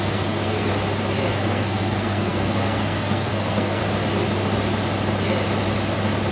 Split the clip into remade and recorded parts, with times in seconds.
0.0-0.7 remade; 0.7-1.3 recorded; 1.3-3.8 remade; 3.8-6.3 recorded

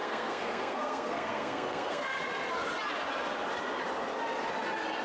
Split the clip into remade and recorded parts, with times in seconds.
0.0-2.2 remade; 2.2-5.0 recorded

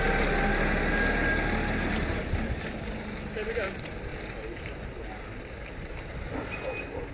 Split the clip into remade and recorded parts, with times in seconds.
0.0-7.1 recorded

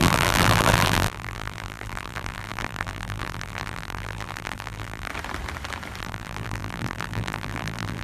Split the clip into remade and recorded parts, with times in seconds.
0.0-5.1 remade; 5.1-6.0 recorded; 6.0-8.0 remade